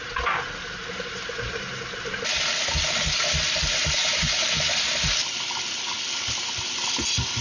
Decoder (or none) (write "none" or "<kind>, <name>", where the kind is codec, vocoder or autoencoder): none